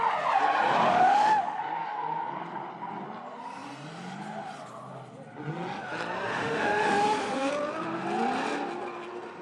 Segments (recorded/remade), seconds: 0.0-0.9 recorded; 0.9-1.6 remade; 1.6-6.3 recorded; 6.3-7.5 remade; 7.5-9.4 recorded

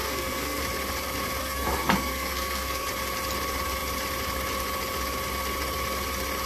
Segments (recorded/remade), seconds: 0.0-0.6 remade; 0.6-1.4 recorded; 1.4-2.9 remade; 2.9-6.5 recorded

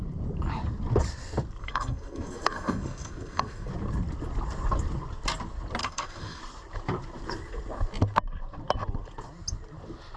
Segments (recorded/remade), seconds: 0.0-1.6 recorded; 1.6-3.7 remade; 3.7-5.8 recorded; 5.8-6.4 remade; 6.4-10.2 recorded

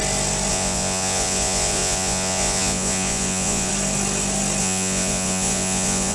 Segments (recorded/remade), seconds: 0.0-0.5 recorded; 0.5-3.7 remade; 3.7-4.6 recorded; 4.6-6.1 remade

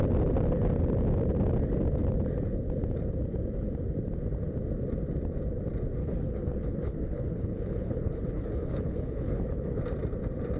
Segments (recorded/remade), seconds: 0.0-6.0 recorded; 6.0-9.8 remade; 9.8-10.6 recorded

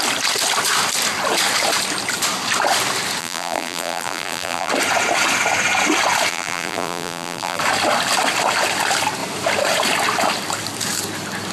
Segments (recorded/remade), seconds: 0.0-3.2 recorded; 3.2-4.7 remade; 4.7-6.3 recorded; 6.3-7.6 remade; 7.6-11.5 recorded